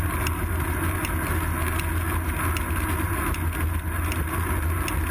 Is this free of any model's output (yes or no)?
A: yes